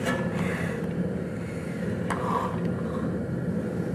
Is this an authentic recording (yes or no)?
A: yes